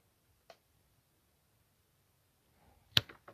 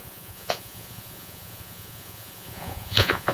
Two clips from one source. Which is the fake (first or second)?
second